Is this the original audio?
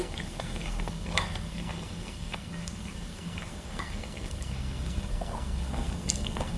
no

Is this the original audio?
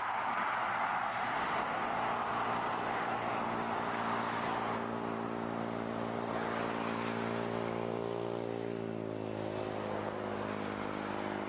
yes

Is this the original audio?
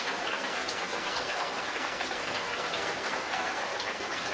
no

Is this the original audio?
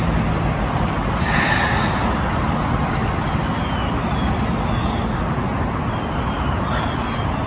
yes